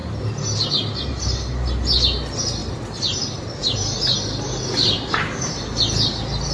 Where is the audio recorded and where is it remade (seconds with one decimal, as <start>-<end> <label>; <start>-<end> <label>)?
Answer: 0.0-0.7 remade; 0.7-4.8 recorded; 4.8-5.5 remade; 5.5-6.5 recorded